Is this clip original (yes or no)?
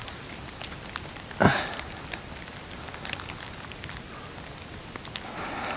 yes